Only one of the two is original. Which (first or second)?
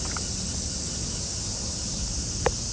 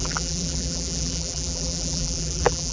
first